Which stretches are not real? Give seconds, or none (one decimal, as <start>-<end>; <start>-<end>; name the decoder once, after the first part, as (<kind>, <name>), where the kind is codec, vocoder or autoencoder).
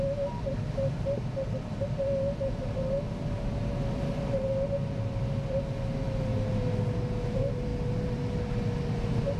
none